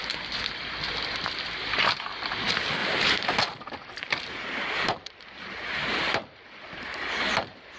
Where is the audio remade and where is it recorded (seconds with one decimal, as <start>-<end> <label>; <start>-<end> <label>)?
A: 0.0-2.8 recorded; 2.8-3.4 remade; 3.4-3.8 recorded; 3.8-7.8 remade